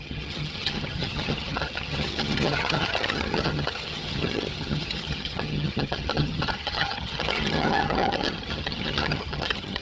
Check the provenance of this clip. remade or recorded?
remade